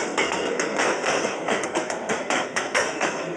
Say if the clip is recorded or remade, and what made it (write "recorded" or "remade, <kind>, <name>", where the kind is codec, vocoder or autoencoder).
remade, codec, SNAC